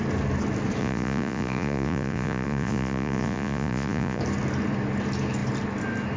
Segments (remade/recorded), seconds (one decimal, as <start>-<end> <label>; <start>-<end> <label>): 0.0-0.8 recorded; 0.8-4.2 remade; 4.2-6.2 recorded